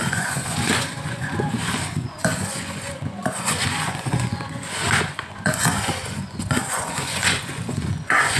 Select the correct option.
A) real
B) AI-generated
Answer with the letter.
B